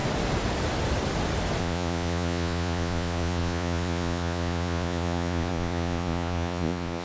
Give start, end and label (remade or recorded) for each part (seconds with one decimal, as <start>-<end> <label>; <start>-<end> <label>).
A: 0.0-1.6 recorded; 1.6-7.0 remade